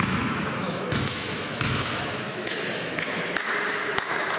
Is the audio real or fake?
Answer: fake